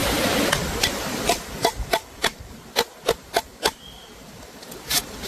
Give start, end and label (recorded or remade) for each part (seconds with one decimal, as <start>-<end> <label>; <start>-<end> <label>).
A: 0.0-2.2 remade; 2.2-3.4 recorded; 3.4-5.3 remade